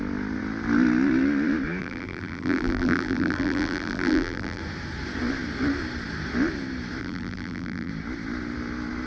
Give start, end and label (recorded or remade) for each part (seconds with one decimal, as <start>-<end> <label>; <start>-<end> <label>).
0.0-1.8 recorded; 1.8-4.6 remade; 4.6-7.0 recorded; 7.0-7.9 remade; 7.9-9.1 recorded